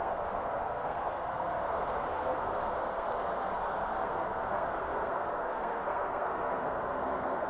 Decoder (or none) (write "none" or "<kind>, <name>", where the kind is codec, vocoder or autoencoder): codec, SNAC